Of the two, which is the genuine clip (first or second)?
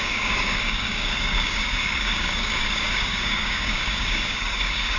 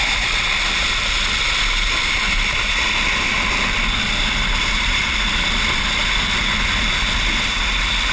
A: second